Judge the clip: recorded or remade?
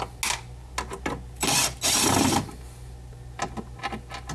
recorded